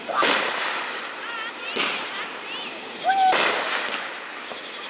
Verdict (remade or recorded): recorded